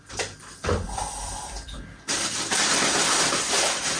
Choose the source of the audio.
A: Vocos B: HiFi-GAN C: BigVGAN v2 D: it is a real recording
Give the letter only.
C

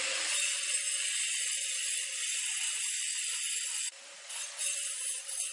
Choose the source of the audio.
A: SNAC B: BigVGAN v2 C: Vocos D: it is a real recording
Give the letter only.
D